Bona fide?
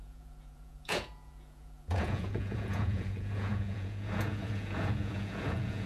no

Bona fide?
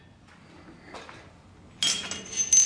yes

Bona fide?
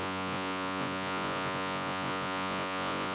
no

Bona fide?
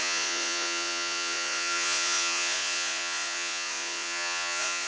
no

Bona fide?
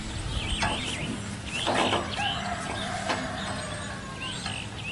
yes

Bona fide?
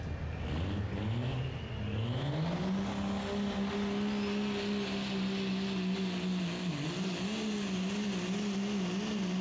yes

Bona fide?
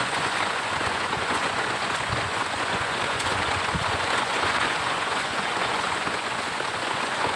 no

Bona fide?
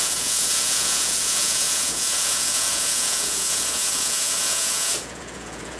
no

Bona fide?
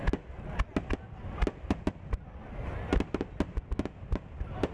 yes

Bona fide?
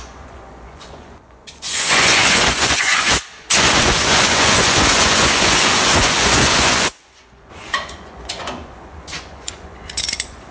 no